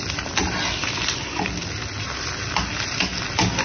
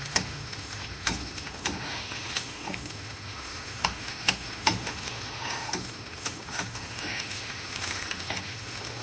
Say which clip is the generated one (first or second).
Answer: second